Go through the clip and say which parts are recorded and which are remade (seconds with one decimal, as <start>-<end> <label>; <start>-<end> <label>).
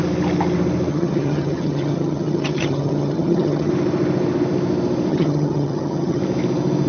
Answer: 0.0-0.9 recorded; 0.9-3.7 remade; 3.7-5.1 recorded; 5.1-6.2 remade; 6.2-6.9 recorded